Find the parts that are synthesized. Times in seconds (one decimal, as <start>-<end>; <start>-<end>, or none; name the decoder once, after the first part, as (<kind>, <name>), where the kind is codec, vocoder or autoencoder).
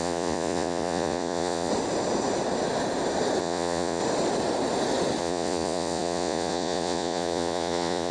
0.0-1.7 (vocoder, Vocos); 3.4-4.0; 5.2-8.1